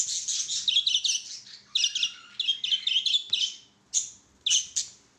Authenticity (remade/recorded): recorded